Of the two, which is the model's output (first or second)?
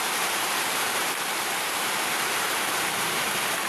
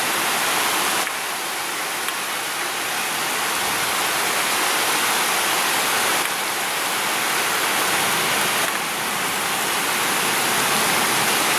first